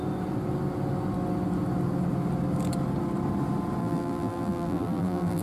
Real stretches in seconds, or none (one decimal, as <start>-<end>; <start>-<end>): 0.0-3.8